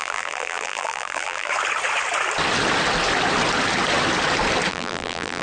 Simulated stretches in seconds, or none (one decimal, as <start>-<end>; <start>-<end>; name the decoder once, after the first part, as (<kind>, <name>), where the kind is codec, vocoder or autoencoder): 0.0-1.5 (vocoder, BigVGAN v2); 4.7-5.4